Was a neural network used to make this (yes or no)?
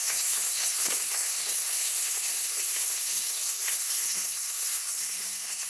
yes